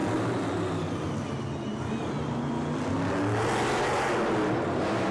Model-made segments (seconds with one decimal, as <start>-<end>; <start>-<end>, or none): none